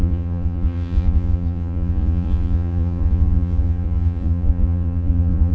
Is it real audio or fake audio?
fake